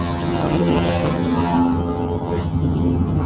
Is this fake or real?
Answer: fake